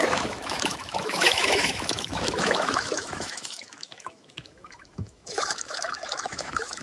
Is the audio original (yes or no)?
no